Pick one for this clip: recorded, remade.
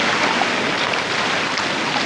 recorded